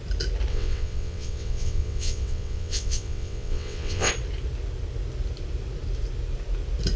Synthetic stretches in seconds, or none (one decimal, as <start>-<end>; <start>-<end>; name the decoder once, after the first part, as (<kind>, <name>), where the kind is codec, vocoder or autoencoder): 0.5-4.1 (vocoder, WaveNeXt)